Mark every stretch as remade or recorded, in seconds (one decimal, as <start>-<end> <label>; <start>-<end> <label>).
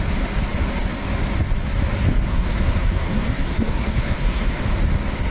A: 0.0-2.3 recorded; 2.3-4.6 remade; 4.6-5.3 recorded